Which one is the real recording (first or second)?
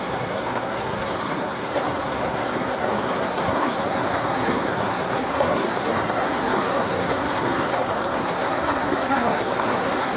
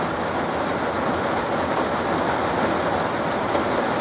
second